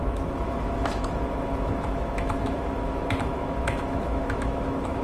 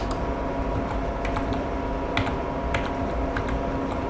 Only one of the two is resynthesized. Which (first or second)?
first